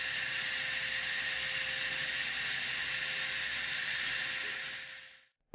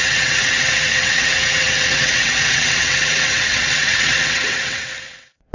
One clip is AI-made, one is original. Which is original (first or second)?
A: first